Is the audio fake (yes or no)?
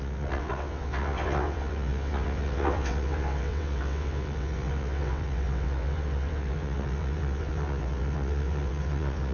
yes